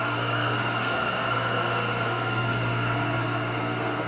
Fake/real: fake